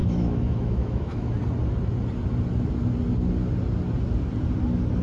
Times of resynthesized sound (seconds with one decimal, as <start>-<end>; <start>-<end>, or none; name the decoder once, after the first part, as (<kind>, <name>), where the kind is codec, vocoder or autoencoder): 0.0-1.3 (autoencoder, DAC-VAE)